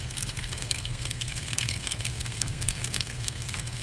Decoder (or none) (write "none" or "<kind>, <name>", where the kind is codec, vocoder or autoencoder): codec, SNAC